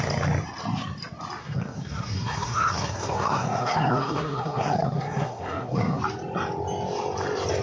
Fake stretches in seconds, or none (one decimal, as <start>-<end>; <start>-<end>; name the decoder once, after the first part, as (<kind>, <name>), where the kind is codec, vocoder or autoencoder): 1.4-6.0 (codec, SNAC)